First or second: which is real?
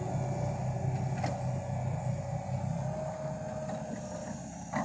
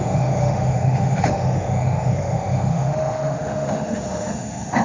first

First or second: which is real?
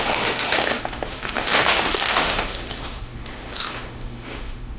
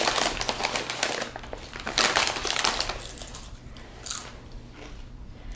second